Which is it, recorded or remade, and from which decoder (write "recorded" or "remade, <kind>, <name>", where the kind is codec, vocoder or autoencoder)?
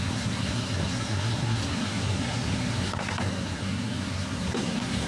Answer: remade, codec, SNAC